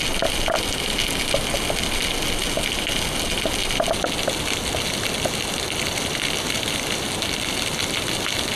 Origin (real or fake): real